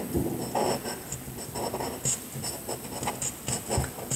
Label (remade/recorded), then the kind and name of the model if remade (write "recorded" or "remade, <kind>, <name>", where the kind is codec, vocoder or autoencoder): recorded